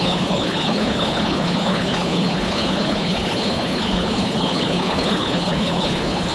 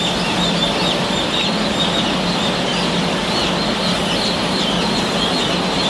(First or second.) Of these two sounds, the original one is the second